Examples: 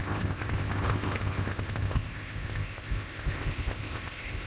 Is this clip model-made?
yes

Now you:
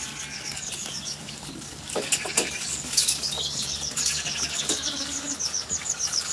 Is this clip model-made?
yes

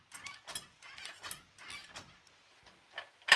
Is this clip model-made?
no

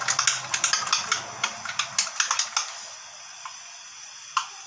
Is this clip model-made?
no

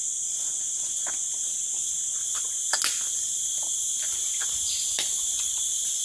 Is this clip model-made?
no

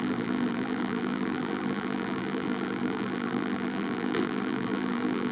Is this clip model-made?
yes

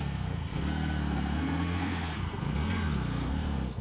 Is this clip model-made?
yes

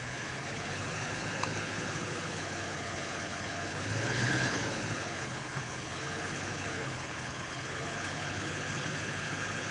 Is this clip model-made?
yes